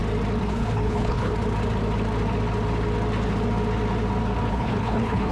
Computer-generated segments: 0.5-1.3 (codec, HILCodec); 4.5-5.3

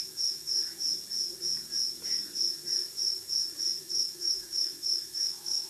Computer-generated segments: 0.0-0.5 (autoencoder, DAC-VAE); 3.8-5.7

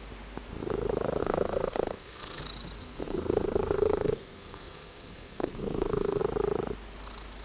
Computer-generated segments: 1.2-2.4 (codec, SNAC); 2.8-6.2

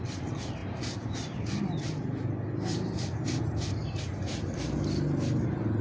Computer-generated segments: none

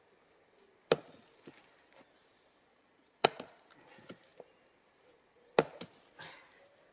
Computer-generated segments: 2.7-3.7 (vocoder, Vocos)

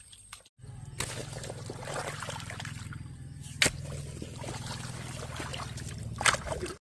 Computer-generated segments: none